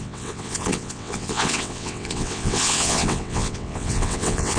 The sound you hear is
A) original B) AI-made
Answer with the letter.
B